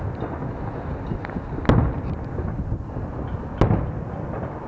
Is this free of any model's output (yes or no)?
yes